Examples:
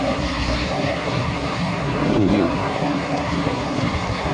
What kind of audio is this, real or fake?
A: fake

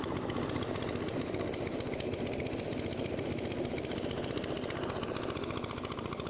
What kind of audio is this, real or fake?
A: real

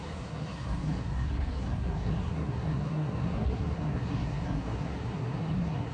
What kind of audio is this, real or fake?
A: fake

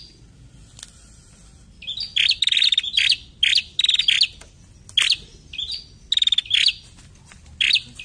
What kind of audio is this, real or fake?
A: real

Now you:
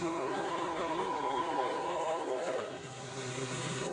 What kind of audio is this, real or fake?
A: fake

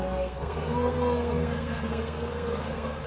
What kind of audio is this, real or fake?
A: fake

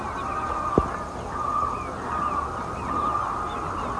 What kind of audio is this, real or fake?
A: real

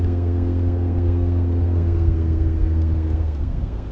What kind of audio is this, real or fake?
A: fake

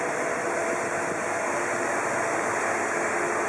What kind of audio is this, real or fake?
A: real